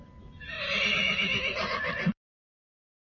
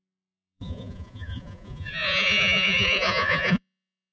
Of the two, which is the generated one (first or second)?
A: second